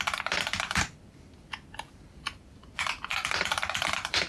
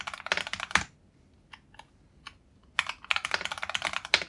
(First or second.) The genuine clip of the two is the second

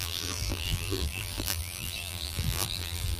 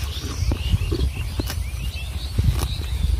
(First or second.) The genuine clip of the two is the second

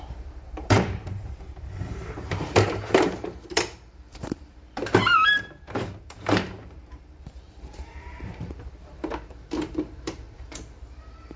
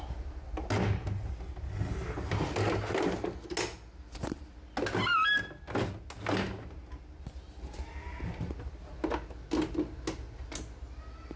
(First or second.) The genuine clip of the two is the second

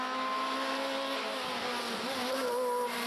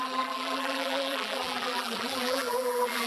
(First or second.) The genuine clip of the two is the first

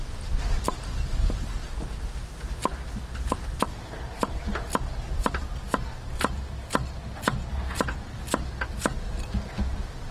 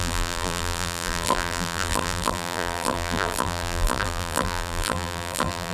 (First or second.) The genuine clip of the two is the first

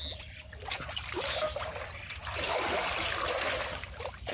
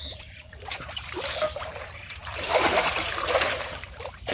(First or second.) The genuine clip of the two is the first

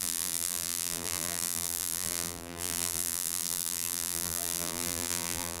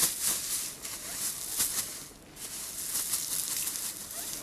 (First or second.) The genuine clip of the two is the second